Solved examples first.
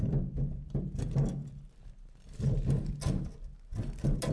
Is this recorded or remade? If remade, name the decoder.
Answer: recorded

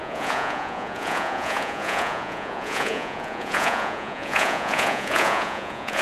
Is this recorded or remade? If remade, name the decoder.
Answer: remade, vocoder, Vocos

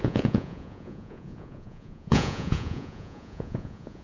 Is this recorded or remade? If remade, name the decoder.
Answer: remade, vocoder, Vocos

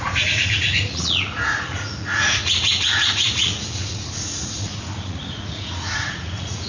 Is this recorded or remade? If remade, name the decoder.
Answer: remade, vocoder, Vocos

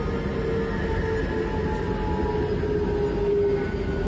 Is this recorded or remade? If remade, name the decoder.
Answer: recorded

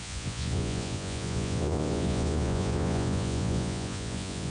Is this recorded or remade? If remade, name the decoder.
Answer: remade, vocoder, Vocos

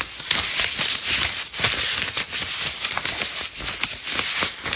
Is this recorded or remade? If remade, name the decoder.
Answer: recorded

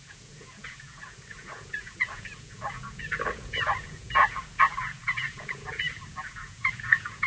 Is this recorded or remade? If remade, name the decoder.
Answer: remade, vocoder, Vocos